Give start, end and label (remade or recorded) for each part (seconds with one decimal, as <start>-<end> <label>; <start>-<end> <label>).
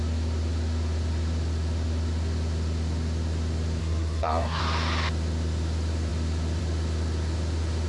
0.0-3.8 recorded; 3.8-4.6 remade; 4.6-7.9 recorded